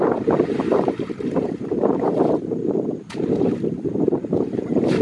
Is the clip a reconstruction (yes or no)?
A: yes